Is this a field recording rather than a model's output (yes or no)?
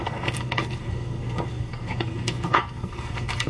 no